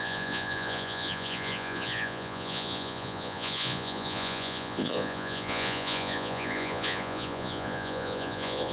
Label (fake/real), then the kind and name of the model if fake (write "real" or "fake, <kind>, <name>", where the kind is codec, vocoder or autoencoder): fake, vocoder, Vocos